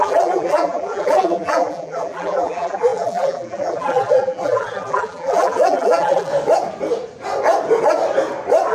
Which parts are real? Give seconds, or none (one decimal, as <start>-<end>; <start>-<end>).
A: 6.3-8.7